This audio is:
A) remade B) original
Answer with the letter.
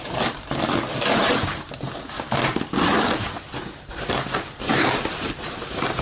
A